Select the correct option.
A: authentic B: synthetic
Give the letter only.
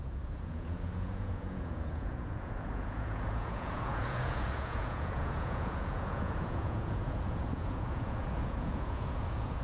B